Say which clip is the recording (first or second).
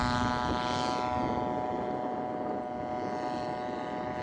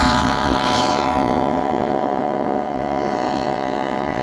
first